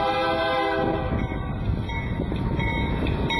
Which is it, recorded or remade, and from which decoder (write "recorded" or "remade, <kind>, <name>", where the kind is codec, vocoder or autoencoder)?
recorded